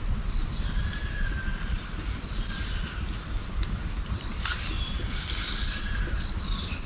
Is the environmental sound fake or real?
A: real